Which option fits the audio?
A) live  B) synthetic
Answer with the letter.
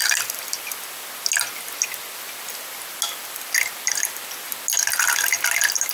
A